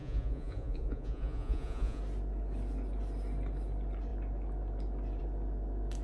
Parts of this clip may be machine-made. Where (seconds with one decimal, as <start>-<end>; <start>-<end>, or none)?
0.0-2.0